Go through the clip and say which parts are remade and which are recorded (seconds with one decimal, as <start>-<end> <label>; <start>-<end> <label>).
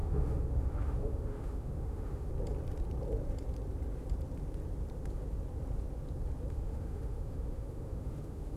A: 0.0-2.3 remade; 2.3-6.5 recorded; 6.5-8.6 remade